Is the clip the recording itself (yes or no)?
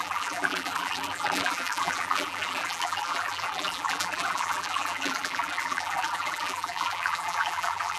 no